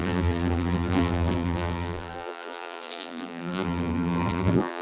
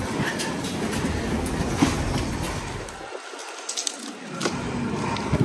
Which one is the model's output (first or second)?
first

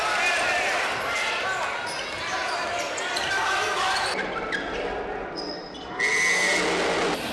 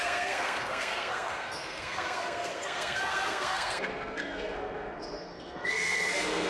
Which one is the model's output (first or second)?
second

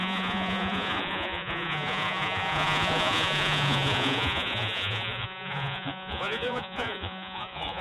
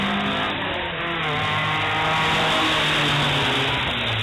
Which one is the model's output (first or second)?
first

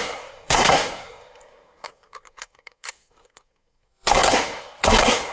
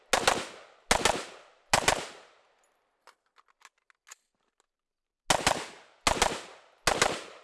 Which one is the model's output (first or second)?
first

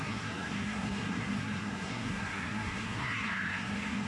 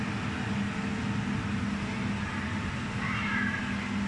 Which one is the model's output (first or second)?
first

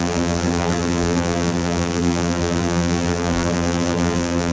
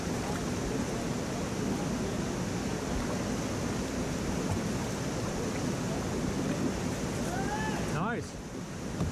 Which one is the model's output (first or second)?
first